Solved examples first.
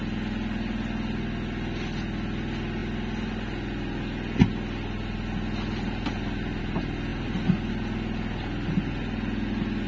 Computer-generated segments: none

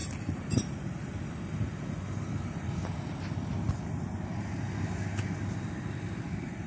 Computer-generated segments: 0.0-3.7 (vocoder, BigVGAN v2)

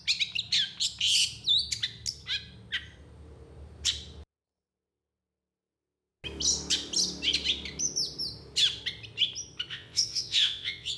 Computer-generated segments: 9.7-11.0 (vocoder, WaveNeXt)

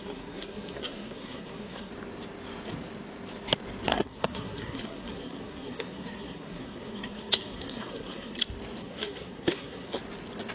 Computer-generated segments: 0.0-1.9 (codec, SNAC); 3.9-8.4; 8.8-10.0